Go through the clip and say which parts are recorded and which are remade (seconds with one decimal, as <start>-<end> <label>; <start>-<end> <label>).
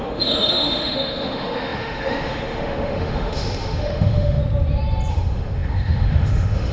0.0-4.4 remade; 4.4-5.1 recorded; 5.1-6.7 remade